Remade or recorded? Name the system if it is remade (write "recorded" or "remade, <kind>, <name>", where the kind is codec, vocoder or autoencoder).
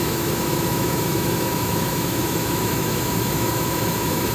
remade, autoencoder, DAC-VAE